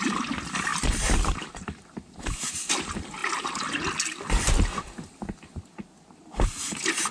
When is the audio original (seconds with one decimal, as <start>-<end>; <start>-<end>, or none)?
0.0-0.7; 2.7-7.1